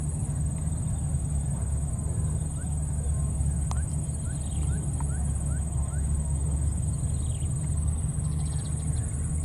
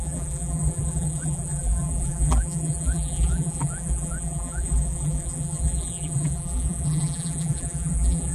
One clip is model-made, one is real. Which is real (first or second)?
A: first